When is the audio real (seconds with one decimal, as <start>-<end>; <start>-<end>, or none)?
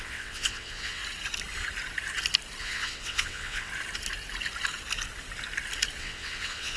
1.0-2.6; 3.7-6.0